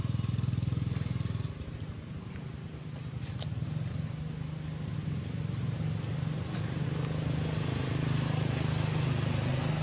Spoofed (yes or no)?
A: no